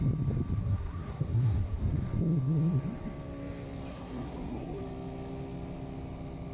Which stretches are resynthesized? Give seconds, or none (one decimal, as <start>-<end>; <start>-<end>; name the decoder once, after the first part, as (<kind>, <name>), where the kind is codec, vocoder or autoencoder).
0.6-1.8 (codec, SNAC); 3.9-4.8